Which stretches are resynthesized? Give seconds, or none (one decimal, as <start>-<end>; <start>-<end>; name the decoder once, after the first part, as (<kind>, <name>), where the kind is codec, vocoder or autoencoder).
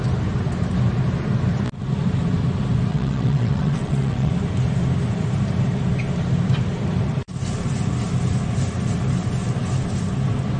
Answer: 2.9-4.3 (vocoder, WaveNeXt)